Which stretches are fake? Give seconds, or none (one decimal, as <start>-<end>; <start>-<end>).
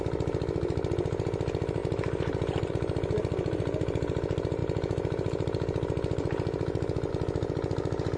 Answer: none